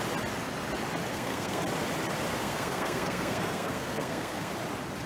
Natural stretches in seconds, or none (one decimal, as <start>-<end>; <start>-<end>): 0.0-1.1; 1.6-2.3; 4.5-5.1